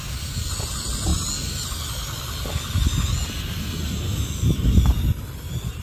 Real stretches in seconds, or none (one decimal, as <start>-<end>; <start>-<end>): 0.0-5.8